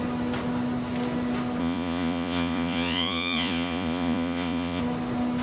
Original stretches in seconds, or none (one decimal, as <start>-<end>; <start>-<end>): 0.0-1.6; 4.8-5.4